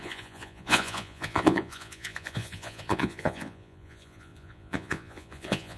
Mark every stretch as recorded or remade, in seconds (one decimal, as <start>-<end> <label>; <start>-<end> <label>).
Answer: 0.0-5.8 remade